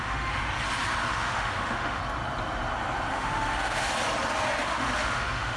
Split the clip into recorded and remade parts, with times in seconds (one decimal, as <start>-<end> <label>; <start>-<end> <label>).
0.0-0.4 remade; 0.4-1.1 recorded; 1.1-2.0 remade; 2.0-3.1 recorded; 3.1-3.9 remade; 3.9-4.6 recorded; 4.6-5.6 remade